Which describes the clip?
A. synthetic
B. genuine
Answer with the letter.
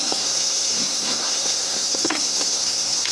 A